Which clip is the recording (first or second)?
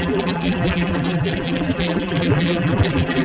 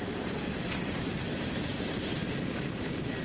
second